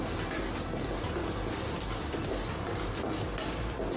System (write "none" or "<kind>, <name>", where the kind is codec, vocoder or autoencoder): none